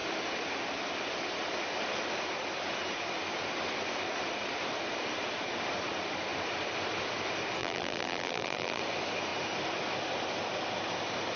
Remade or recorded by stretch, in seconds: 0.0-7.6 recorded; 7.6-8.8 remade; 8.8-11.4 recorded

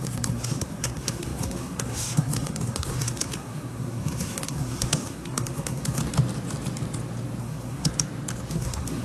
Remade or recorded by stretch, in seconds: 0.0-6.0 remade; 6.0-7.4 recorded; 7.4-7.9 remade; 7.9-8.5 recorded; 8.5-9.0 remade

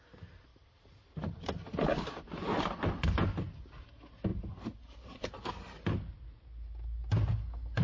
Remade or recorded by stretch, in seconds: 0.0-0.5 recorded; 0.5-2.8 remade; 2.8-4.3 recorded; 4.3-5.5 remade; 5.5-7.8 recorded

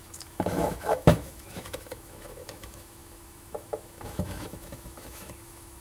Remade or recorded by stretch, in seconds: 0.0-5.8 remade

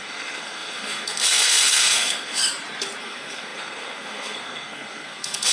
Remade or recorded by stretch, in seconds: 0.0-2.4 remade; 2.4-3.0 recorded; 3.0-5.5 remade